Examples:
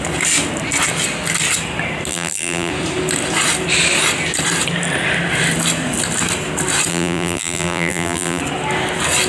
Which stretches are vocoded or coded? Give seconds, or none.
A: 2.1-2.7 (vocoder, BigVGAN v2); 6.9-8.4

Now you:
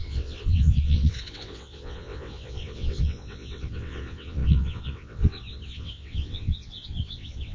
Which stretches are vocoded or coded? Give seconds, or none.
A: 0.0-7.5 (vocoder, WaveNeXt)